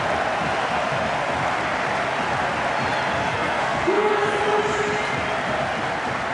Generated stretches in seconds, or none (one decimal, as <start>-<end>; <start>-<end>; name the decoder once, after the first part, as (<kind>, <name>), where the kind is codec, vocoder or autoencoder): 3.2-4.4 (codec, SNAC)